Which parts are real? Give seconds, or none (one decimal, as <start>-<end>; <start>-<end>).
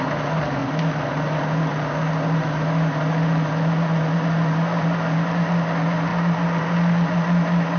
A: 0.0-7.8